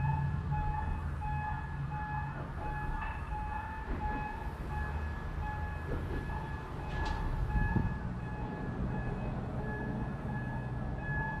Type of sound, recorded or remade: recorded